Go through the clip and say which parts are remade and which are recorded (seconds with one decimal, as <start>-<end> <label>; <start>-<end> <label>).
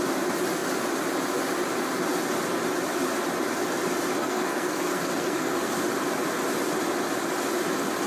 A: 0.0-4.2 recorded; 4.2-5.7 remade; 5.7-8.1 recorded